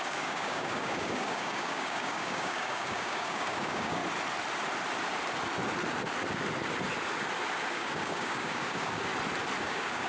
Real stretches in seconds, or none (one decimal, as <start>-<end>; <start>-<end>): 4.0-7.7; 9.1-9.6